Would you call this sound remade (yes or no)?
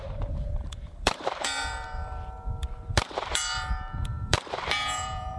yes